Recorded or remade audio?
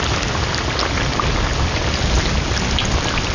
recorded